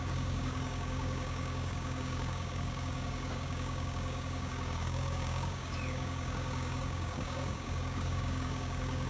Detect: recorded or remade remade